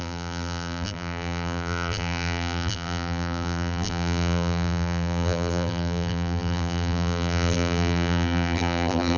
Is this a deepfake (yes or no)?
yes